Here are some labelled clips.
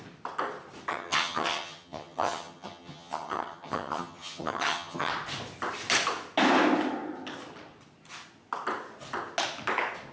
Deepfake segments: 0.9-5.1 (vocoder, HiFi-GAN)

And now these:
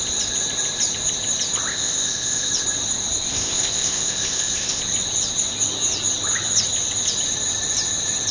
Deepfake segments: 1.7-2.5 (codec, ZipCodec); 3.3-4.8

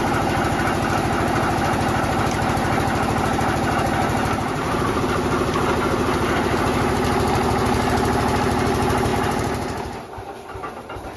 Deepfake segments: 4.2-5.0 (vocoder, BigVGAN v2); 9.1-10.0

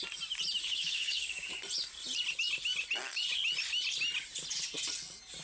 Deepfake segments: 0.6-1.5 (codec, DAC)

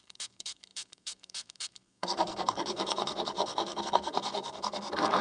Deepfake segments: 0.0-5.2 (codec, SNAC)

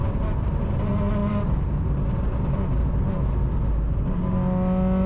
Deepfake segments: none

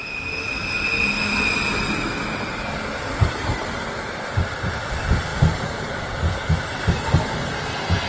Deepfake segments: none